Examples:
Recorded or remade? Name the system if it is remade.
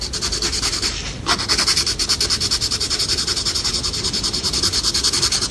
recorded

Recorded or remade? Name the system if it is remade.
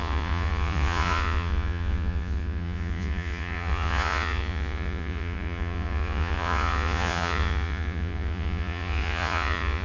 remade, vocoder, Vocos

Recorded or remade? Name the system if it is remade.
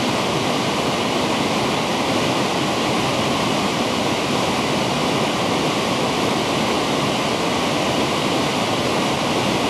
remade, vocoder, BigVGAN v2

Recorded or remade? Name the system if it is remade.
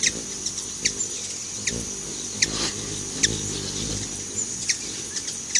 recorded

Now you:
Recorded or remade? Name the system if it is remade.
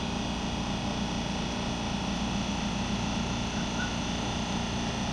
recorded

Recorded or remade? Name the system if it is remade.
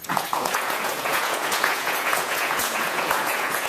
remade, vocoder, Vocos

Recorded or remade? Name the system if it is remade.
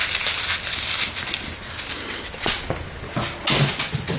recorded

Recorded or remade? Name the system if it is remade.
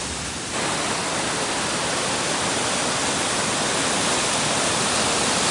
recorded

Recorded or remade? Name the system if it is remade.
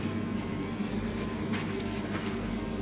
remade, codec, SNAC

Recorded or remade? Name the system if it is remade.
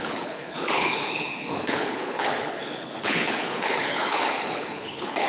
remade, codec, HILCodec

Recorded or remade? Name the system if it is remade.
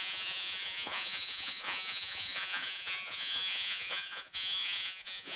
remade, vocoder, Vocos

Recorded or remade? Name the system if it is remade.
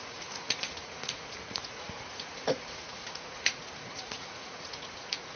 remade, vocoder, Vocos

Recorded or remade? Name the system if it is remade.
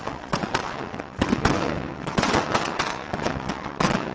remade, vocoder, WaveNeXt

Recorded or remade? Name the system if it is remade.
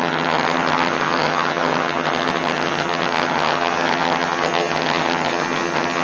remade, vocoder, HiFi-GAN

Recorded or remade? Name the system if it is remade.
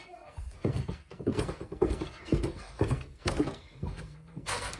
remade, codec, SNAC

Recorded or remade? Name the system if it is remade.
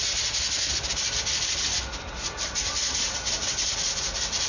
recorded